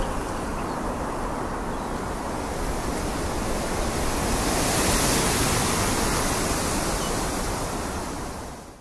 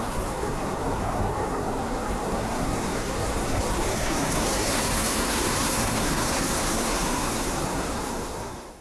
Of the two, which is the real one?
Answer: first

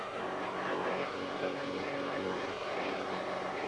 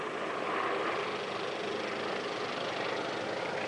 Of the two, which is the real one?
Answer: second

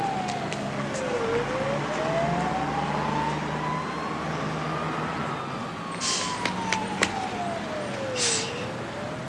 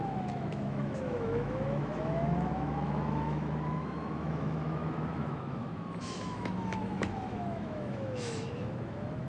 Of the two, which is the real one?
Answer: first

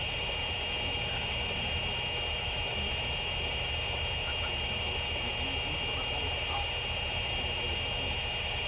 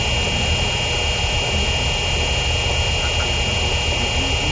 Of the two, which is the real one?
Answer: second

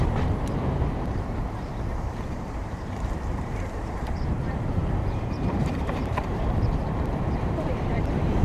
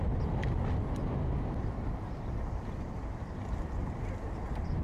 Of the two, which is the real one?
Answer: second